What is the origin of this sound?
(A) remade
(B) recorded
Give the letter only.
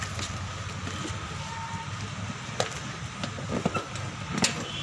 B